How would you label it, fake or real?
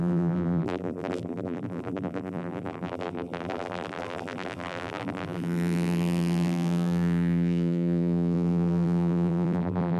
fake